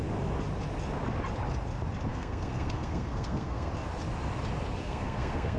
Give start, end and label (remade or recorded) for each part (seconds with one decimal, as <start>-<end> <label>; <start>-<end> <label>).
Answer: 0.0-2.1 recorded; 2.1-3.7 remade; 3.7-4.8 recorded; 4.8-5.6 remade